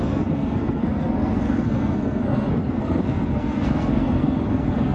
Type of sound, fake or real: fake